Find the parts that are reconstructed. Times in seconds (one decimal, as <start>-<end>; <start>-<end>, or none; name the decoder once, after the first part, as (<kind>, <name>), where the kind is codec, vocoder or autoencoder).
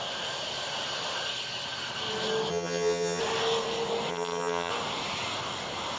2.5-3.2 (vocoder, HiFi-GAN); 4.1-4.7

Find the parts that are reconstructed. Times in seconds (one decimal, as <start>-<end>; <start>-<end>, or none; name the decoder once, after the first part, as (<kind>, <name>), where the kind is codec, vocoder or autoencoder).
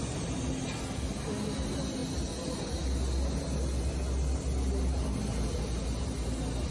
none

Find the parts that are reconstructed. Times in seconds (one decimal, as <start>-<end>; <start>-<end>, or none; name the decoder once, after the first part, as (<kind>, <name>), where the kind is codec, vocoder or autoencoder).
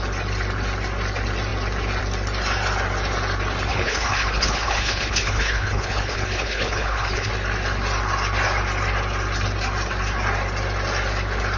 3.7-7.3 (codec, HILCodec)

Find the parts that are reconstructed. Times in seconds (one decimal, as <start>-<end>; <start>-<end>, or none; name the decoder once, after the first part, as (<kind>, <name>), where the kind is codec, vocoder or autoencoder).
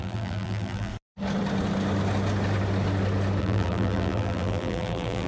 0.0-0.9 (vocoder, BigVGAN v2); 3.4-5.3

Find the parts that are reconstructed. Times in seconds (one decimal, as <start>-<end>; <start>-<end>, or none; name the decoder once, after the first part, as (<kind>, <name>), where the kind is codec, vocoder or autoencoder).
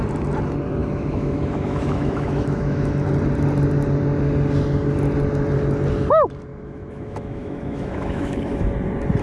0.8-2.9 (autoencoder, DAC-VAE); 6.5-8.7